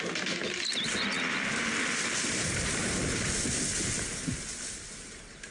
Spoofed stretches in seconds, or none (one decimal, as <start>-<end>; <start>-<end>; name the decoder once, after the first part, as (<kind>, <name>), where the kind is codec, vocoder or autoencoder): none